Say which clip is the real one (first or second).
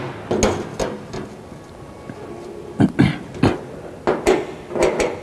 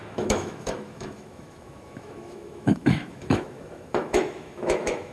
first